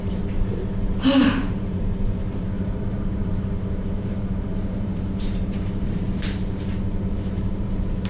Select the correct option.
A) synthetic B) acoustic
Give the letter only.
A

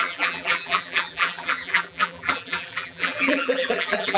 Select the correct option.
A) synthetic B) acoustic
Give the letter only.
A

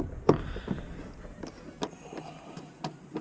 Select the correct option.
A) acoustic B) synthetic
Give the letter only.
A